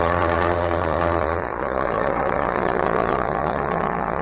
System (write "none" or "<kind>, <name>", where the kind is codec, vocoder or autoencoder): vocoder, Vocos